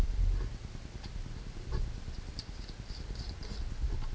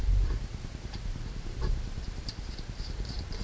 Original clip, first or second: first